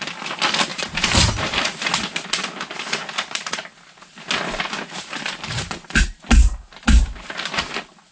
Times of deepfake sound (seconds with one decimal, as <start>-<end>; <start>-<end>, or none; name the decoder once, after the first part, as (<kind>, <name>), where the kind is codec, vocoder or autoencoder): 0.7-2.0 (vocoder, BigVGAN v2)